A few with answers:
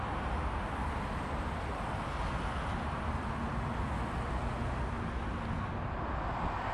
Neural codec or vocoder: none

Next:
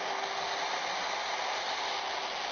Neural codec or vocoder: none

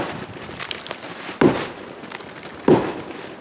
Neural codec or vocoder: none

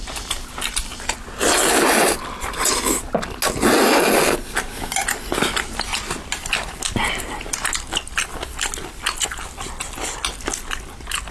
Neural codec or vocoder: none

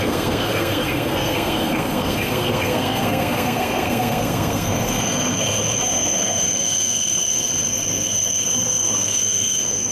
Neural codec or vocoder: codec, SNAC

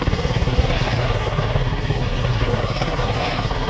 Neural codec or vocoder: codec, SNAC